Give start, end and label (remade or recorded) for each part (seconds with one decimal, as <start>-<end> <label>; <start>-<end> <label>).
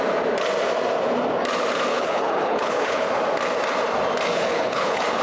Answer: 0.0-1.9 recorded; 1.9-3.1 remade; 3.1-4.3 recorded; 4.3-5.2 remade